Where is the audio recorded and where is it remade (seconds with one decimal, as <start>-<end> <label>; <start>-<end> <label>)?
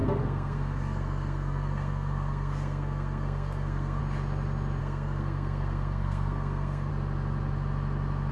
0.0-4.0 remade; 4.0-4.8 recorded; 4.8-6.9 remade; 6.9-8.3 recorded